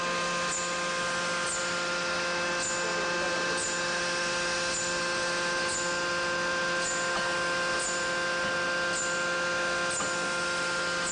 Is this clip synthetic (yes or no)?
no